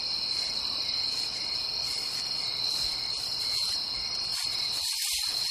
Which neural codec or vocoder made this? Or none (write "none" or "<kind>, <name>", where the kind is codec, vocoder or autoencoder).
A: vocoder, BigVGAN v2